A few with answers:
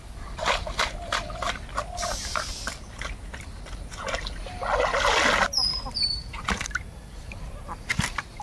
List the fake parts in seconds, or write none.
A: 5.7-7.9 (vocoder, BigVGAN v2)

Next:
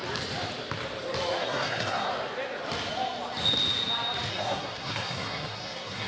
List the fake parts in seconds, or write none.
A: 1.4-2.1 (codec, SNAC); 4.3-6.1

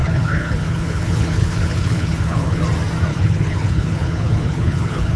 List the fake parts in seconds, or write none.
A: 0.0-2.6 (codec, HILCodec); 3.1-5.2

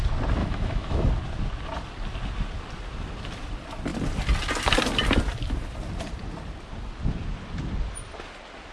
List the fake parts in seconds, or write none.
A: 0.4-1.1 (autoencoder, DAC-VAE)

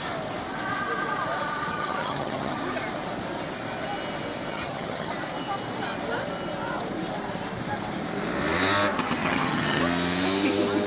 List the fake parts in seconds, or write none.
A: 1.7-2.6 (vocoder, HiFi-GAN); 4.5-5.1; 9.2-9.8